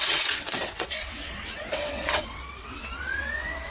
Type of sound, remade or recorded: remade